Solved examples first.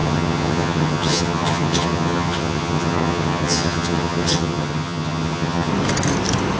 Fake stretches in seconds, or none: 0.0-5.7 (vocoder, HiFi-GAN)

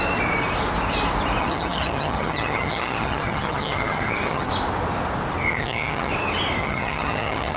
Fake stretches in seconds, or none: 1.4-4.5 (vocoder, HiFi-GAN); 5.5-6.1; 6.6-7.6